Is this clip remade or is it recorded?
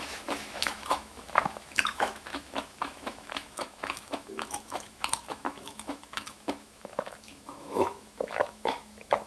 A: remade